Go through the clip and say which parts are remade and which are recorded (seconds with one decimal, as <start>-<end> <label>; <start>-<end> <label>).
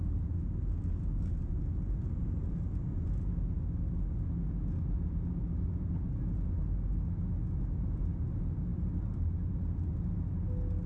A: 0.0-8.7 recorded; 8.7-9.3 remade; 9.3-10.9 recorded